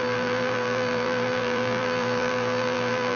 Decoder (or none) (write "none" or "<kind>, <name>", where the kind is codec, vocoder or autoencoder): vocoder, BigVGAN v2